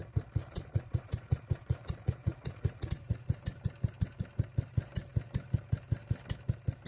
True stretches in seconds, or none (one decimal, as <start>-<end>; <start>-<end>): 0.0-0.4; 3.4-6.9